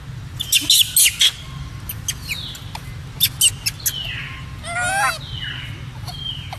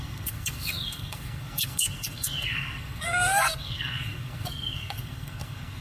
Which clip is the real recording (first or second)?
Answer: first